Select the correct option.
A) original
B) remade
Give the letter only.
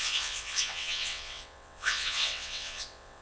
B